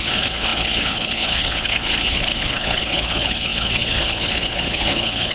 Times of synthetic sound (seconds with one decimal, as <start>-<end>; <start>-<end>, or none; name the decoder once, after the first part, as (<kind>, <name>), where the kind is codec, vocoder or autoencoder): 0.0-5.3 (codec, HILCodec)